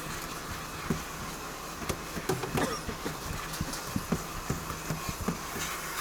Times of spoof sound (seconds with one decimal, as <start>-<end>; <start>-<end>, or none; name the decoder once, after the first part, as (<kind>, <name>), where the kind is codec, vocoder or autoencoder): none